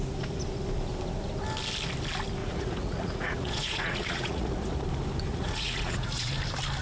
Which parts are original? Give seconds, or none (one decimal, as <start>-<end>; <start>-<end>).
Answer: 0.0-2.4; 4.5-5.3; 6.3-6.8